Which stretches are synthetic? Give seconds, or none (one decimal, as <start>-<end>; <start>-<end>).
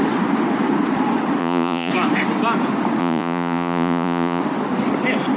1.4-1.9; 3.0-4.4